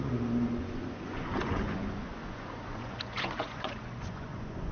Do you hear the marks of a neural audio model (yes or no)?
yes